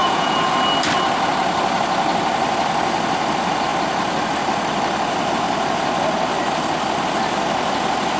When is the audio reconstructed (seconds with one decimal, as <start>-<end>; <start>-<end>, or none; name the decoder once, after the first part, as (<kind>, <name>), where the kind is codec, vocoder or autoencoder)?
0.0-0.5 (vocoder, Vocos)